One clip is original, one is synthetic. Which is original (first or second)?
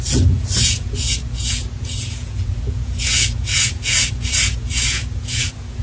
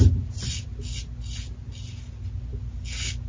second